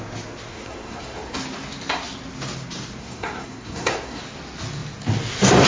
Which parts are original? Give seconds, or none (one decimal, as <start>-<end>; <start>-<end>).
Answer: 0.0-0.5; 1.4-3.0; 4.2-5.7

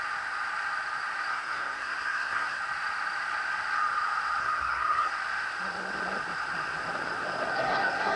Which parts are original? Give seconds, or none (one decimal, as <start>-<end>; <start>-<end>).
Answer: 0.0-1.3; 2.6-4.4; 5.1-7.5

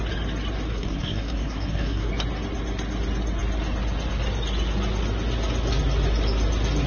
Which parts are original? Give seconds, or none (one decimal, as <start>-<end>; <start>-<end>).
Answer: 0.0-0.7; 2.1-6.9

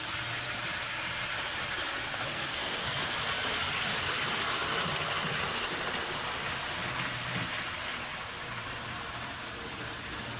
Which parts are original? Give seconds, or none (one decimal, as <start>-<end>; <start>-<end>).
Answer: 0.0-2.3; 3.0-10.4

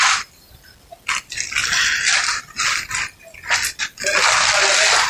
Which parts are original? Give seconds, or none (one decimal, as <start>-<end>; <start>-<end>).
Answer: 0.0-5.1

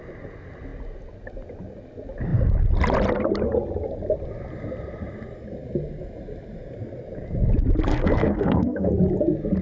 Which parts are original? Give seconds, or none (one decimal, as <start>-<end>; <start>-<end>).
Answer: 0.0-7.9; 8.9-9.6